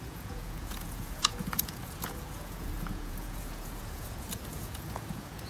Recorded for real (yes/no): no